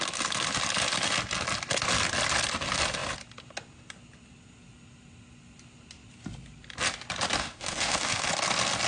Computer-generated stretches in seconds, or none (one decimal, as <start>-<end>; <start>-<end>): 7.4-8.3